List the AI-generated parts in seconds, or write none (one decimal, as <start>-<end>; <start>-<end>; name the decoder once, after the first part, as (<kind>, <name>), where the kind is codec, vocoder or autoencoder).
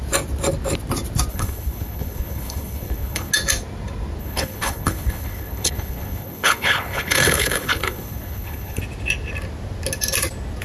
1.3-3.3 (codec, HILCodec); 4.2-8.8